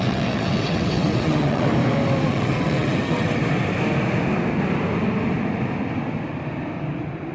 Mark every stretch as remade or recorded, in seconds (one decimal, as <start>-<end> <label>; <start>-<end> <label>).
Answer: 0.0-1.7 remade; 1.7-2.3 recorded; 2.3-3.4 remade; 3.4-7.3 recorded